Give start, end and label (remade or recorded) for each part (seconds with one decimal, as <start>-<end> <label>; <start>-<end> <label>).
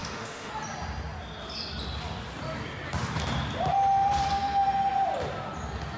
0.0-0.5 remade; 0.5-6.0 recorded